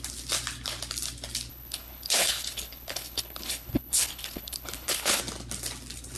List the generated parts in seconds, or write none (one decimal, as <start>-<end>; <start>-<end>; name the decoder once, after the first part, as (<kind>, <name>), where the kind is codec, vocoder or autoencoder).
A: 1.5-5.2 (codec, HILCodec)